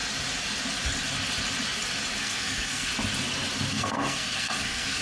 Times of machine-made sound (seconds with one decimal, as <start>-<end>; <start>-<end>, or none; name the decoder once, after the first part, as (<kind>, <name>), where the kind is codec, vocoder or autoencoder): 2.2-2.9 (codec, SNAC); 3.7-5.0